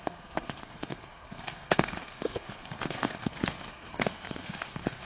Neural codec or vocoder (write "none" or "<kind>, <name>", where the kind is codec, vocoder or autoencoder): codec, SNAC